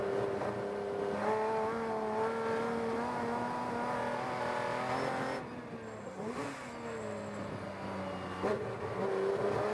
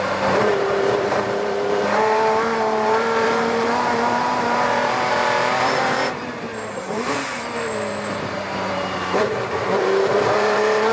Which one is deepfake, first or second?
second